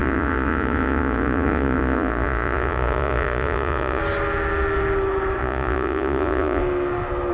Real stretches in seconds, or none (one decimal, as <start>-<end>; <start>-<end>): 4.0-5.4; 6.6-7.3